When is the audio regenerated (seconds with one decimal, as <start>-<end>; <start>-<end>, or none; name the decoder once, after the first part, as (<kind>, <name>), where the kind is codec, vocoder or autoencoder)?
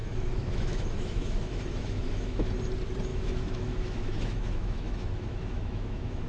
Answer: 0.0-2.5 (autoencoder, DAC-VAE); 3.1-6.3